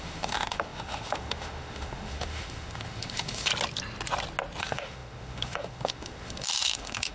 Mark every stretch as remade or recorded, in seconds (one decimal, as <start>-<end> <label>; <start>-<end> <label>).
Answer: 0.0-3.5 remade; 3.5-4.6 recorded; 4.6-7.1 remade